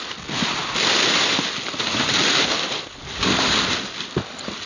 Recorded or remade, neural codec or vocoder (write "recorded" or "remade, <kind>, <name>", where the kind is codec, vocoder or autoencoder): recorded